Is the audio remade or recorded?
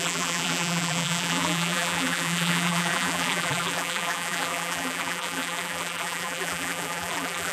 remade